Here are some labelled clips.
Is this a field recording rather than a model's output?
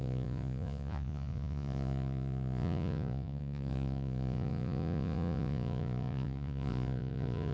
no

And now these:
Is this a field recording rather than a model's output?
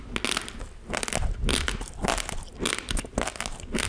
yes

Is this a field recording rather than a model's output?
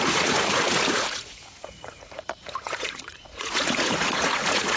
no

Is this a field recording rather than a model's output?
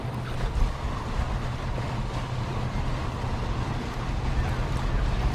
yes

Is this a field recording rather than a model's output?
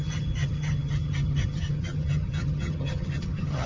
no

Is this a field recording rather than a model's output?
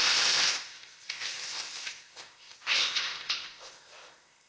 no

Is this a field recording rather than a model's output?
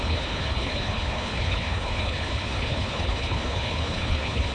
no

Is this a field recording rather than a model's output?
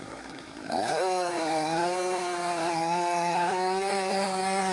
no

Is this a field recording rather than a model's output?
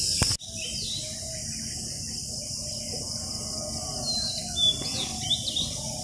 yes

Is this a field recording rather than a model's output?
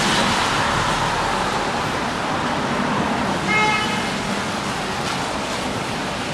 yes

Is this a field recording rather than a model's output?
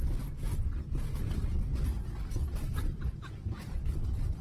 yes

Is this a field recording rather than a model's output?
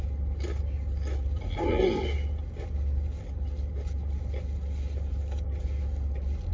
yes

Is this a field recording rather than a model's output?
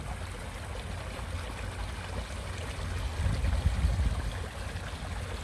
yes